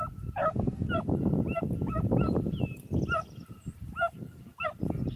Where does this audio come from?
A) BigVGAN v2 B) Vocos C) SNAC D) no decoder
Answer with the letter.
D